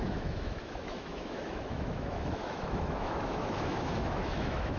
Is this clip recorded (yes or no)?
no